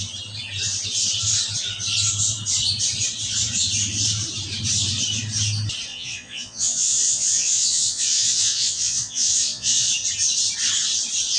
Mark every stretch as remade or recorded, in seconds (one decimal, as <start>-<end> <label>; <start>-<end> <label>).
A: 0.0-5.9 recorded; 5.9-9.9 remade; 9.9-11.4 recorded